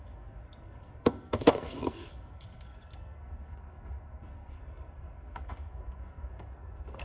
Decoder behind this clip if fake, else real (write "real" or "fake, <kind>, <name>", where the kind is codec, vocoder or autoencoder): fake, codec, SNAC